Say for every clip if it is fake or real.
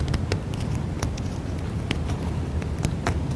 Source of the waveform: real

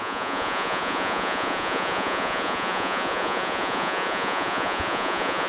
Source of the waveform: fake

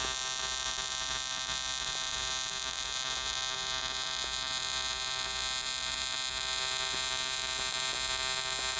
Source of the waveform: real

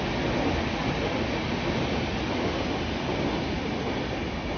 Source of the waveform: real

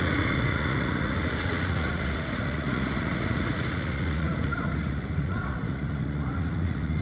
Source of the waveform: fake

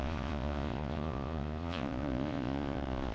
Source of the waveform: fake